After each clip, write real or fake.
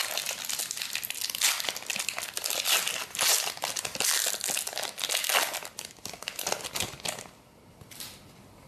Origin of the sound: real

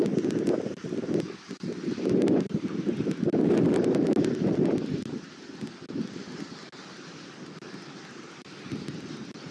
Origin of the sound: real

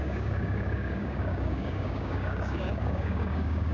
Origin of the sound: fake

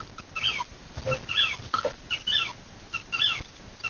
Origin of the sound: real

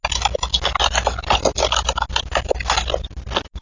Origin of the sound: real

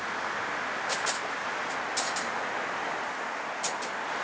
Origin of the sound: real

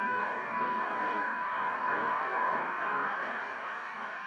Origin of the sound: fake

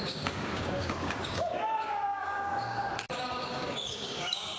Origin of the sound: fake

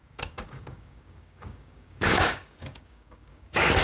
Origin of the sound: fake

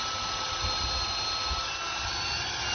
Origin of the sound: real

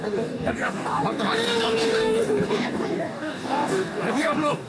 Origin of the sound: fake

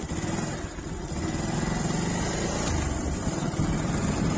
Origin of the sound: real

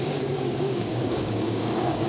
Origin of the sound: fake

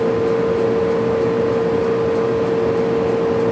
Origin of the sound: real